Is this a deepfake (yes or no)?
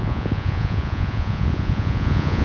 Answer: yes